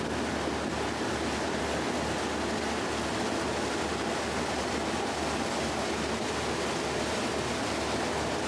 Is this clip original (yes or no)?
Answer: yes